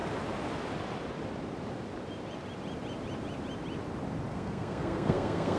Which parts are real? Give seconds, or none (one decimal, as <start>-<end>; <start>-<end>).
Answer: 0.0-4.3

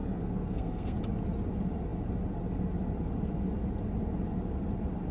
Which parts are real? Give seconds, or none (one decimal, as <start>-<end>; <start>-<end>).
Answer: 1.0-5.1